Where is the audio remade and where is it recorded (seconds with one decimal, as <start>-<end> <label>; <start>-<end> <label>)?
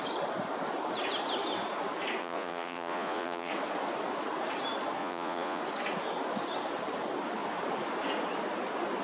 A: 0.0-2.2 recorded; 2.2-3.5 remade; 3.5-5.0 recorded; 5.0-5.6 remade; 5.6-9.0 recorded